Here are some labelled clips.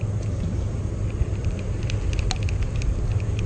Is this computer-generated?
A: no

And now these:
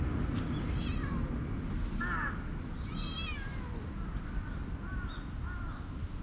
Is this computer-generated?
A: no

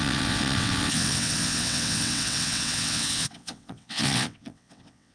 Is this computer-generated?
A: yes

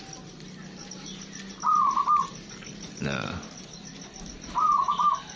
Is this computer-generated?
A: no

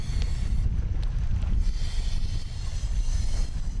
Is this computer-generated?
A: no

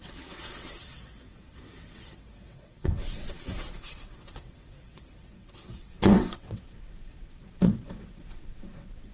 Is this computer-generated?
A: yes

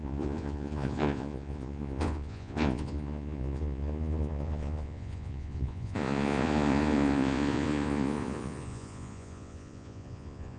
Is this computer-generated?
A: yes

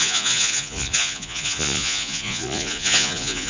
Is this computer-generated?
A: yes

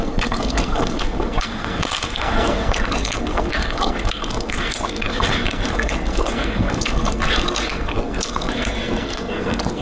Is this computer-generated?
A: yes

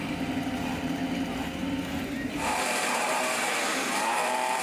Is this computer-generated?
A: yes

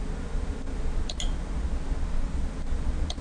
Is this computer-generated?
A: no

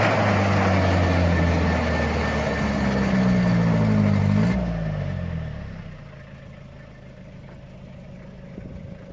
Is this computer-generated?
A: no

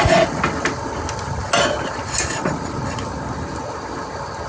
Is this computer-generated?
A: no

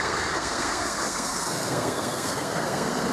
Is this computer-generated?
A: yes